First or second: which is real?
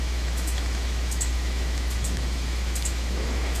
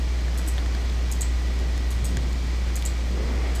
second